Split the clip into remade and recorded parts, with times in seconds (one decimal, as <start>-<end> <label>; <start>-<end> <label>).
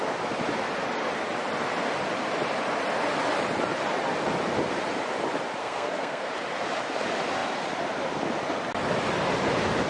0.0-5.6 recorded; 5.6-6.3 remade; 6.3-9.9 recorded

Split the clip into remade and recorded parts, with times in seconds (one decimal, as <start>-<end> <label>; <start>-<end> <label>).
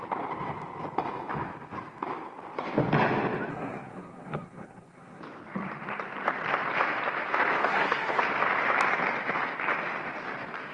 0.0-3.5 recorded; 3.5-5.2 remade; 5.2-7.6 recorded; 7.6-8.2 remade; 8.2-10.7 recorded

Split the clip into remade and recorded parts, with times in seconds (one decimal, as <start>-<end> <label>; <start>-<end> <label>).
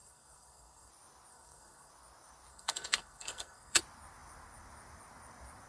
0.0-0.9 remade; 0.9-1.3 recorded; 1.3-1.9 remade; 1.9-2.5 recorded; 2.5-3.8 remade; 3.8-5.7 recorded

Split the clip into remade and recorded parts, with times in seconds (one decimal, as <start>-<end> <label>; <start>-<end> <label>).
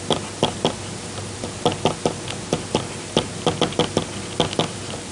0.0-5.1 recorded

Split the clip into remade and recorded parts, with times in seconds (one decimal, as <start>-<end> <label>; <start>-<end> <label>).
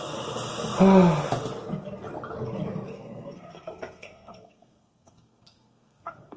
0.0-2.9 recorded; 2.9-6.4 remade